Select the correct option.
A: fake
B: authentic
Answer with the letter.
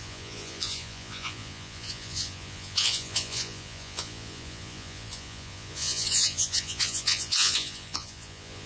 A